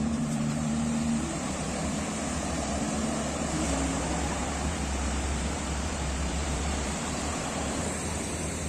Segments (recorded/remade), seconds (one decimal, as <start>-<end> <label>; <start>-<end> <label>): 0.0-1.8 remade; 1.8-2.3 recorded; 2.3-8.7 remade